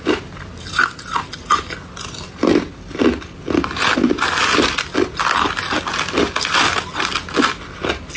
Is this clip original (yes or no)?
yes